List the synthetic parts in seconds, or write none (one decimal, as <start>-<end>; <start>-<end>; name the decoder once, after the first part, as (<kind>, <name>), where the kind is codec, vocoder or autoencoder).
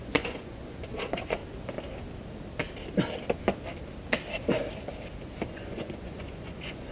0.0-1.4 (vocoder, Vocos); 5.5-6.9